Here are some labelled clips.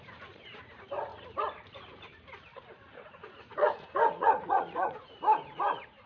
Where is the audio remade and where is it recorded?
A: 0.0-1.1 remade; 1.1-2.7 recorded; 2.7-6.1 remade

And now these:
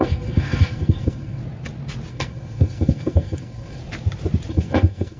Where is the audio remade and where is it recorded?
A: 0.0-1.4 remade; 1.4-2.1 recorded; 2.1-3.8 remade; 3.8-4.5 recorded; 4.5-5.2 remade

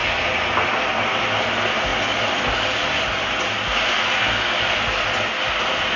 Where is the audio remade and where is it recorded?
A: 0.0-6.0 recorded

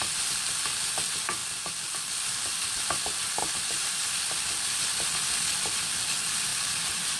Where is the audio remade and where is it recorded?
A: 0.0-3.4 recorded; 3.4-4.1 remade; 4.1-6.5 recorded; 6.5-7.2 remade